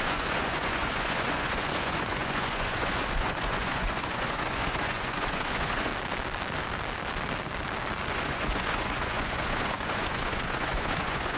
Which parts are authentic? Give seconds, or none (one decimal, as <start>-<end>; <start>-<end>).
5.9-8.1